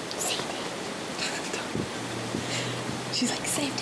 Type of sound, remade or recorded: recorded